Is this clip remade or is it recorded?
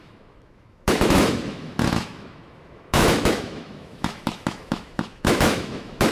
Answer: remade